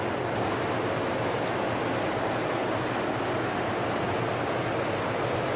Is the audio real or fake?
real